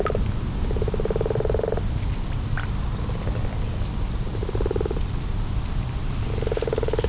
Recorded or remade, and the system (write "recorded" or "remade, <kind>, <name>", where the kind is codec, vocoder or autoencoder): recorded